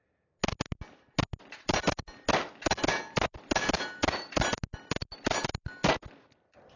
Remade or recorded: recorded